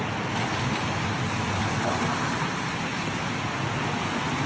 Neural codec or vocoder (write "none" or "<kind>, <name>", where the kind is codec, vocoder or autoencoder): none